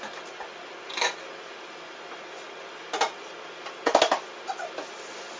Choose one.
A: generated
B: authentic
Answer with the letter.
B